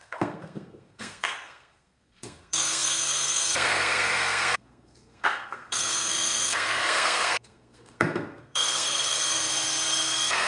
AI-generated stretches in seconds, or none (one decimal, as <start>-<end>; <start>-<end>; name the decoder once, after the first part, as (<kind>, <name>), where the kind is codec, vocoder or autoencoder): 0.0-10.5 (codec, SNAC)